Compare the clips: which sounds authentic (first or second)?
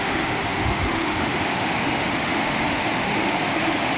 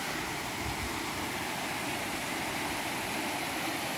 second